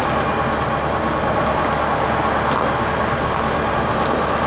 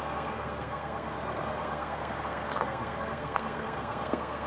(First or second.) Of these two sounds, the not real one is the second